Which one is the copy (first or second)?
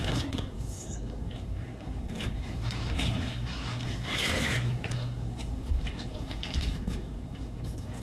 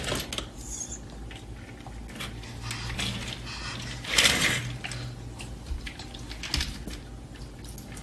first